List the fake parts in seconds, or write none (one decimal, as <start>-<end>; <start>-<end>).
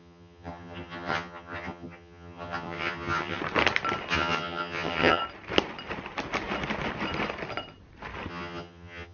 0.0-3.4; 4.1-5.2; 8.3-9.1